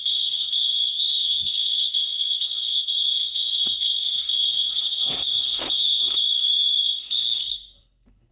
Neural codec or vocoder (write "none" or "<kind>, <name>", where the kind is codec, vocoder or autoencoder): codec, SNAC